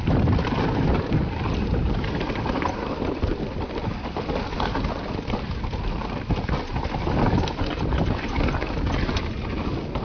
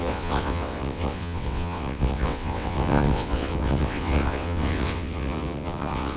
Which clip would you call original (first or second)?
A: first